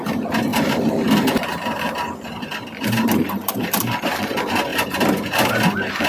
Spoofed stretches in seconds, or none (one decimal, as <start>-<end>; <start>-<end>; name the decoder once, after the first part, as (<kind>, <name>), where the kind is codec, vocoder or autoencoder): 0.5-4.2 (vocoder, BigVGAN v2); 4.7-5.5